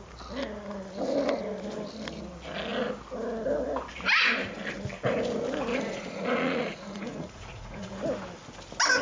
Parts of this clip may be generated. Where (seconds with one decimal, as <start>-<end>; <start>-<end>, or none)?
5.7-7.9